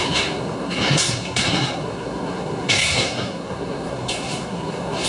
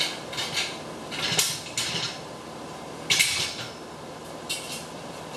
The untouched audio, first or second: second